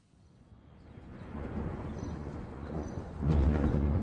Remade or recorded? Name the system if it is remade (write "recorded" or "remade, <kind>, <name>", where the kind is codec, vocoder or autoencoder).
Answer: remade, vocoder, Vocos